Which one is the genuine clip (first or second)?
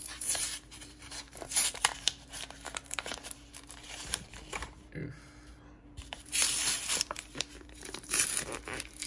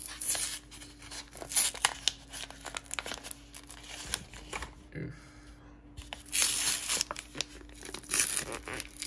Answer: second